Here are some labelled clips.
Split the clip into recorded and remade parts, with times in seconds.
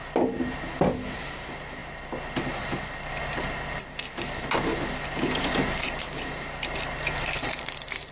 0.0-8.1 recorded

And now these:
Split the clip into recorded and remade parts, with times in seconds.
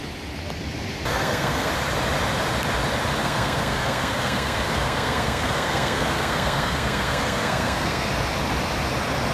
0.0-1.1 recorded; 1.1-1.7 remade; 1.7-3.2 recorded; 3.2-8.1 remade; 8.1-9.3 recorded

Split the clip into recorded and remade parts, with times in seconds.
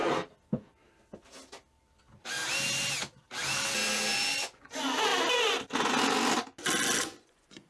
0.0-4.3 recorded; 4.3-5.1 remade; 5.1-7.0 recorded; 7.0-7.7 remade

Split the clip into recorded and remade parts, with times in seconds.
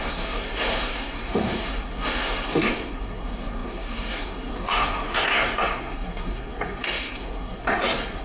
0.0-8.2 remade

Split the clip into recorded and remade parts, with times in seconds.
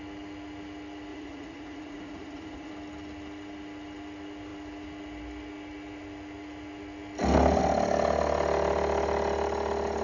0.0-1.1 recorded; 1.1-2.7 remade; 2.7-10.0 recorded